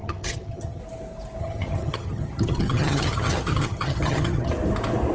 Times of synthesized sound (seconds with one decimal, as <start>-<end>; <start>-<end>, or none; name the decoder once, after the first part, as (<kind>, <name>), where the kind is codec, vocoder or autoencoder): 0.0-0.8 (vocoder, HiFi-GAN); 1.4-4.5